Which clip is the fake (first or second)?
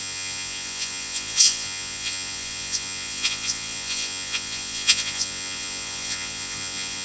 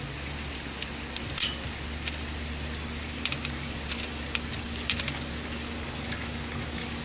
first